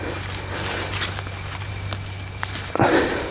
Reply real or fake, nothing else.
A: real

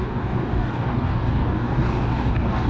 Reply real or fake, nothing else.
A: fake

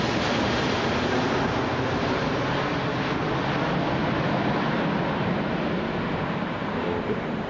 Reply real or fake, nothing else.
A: real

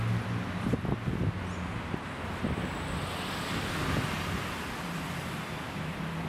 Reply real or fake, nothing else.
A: real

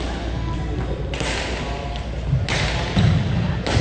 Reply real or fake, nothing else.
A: real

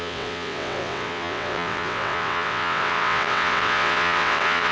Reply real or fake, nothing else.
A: fake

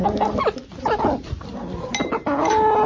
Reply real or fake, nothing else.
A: real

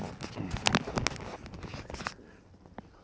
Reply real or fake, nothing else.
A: real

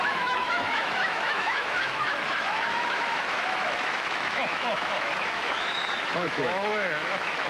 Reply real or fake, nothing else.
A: fake